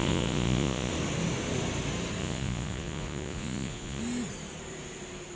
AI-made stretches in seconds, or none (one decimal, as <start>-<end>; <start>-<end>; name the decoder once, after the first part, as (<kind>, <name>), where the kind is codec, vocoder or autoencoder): 0.0-0.9 (vocoder, Vocos); 2.2-4.0